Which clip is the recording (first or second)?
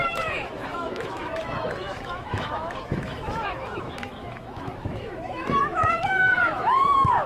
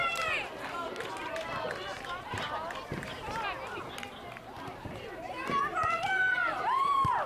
second